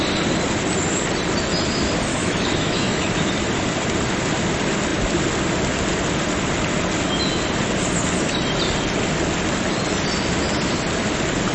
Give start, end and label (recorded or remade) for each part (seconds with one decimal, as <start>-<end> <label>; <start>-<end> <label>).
0.0-2.1 recorded; 2.1-3.3 remade; 3.3-11.5 recorded